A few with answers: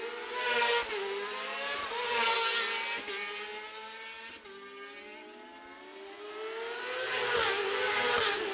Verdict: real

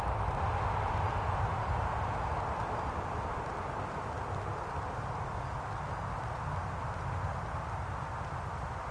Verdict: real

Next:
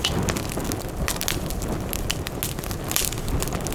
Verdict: real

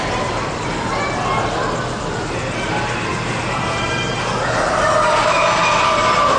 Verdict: real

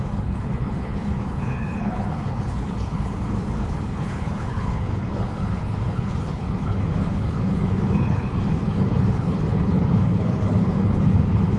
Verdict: fake